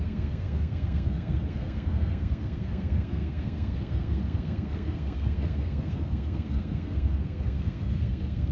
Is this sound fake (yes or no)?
yes